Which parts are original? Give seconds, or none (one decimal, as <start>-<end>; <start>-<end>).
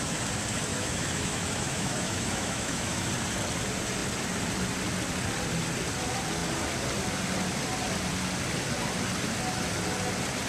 0.0-0.7; 3.1-10.5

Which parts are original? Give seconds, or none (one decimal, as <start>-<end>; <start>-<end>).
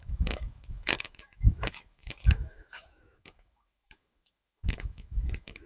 none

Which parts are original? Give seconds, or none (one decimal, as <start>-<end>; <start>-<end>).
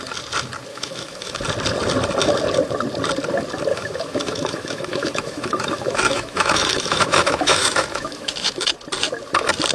0.0-0.7; 1.4-3.7; 8.7-9.7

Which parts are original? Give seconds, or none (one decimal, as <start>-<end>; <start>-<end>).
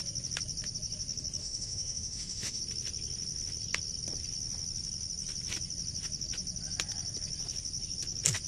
0.0-1.4; 2.6-8.5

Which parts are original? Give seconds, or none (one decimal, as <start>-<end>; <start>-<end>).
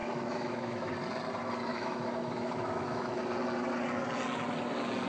0.9-1.7; 3.2-5.1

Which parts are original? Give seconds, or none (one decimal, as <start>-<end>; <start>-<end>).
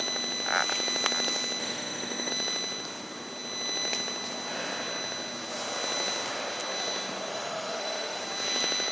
0.0-1.6; 2.3-7.3; 8.2-8.9